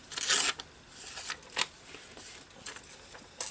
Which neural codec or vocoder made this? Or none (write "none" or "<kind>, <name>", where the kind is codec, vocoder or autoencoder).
none